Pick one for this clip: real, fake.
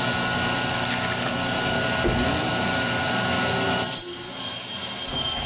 real